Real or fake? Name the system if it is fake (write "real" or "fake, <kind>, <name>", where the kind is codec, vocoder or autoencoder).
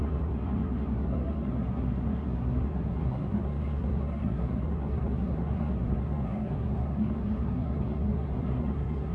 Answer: fake, codec, SNAC